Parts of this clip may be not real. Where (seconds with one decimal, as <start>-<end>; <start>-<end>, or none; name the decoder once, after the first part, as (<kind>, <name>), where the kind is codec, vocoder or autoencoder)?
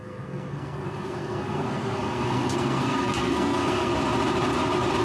0.0-3.9 (codec, SNAC)